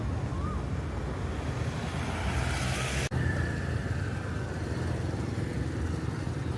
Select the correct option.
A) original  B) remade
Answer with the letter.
A